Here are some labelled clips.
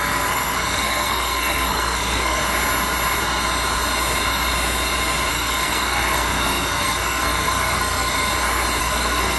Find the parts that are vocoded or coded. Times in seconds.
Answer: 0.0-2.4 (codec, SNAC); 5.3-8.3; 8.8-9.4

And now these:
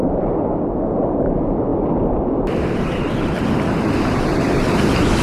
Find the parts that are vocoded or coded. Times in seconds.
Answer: none

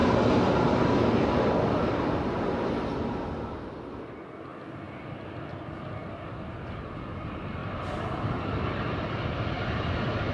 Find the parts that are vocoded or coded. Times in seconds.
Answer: 7.6-10.3 (vocoder, BigVGAN v2)

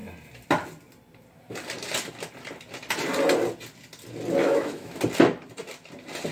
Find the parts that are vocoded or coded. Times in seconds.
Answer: 4.4-5.0 (autoencoder, DAC-VAE)